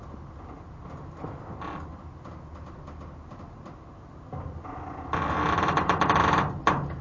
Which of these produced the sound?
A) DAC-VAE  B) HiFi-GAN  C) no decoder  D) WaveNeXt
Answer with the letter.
C